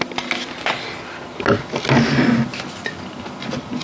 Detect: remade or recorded recorded